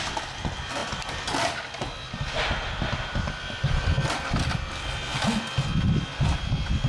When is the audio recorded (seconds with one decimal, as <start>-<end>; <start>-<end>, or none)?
0.0-6.9

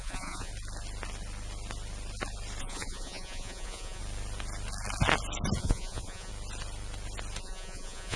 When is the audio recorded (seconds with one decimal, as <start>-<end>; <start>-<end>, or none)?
0.5-2.6; 4.0-5.6; 6.3-7.4